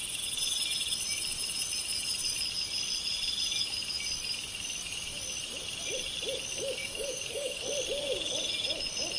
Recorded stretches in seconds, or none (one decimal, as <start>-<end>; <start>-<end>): 0.0-6.8; 7.6-9.2